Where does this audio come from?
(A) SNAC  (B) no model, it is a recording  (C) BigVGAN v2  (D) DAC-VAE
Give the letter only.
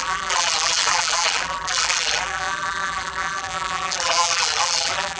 C